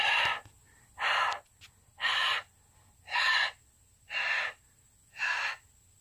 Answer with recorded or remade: recorded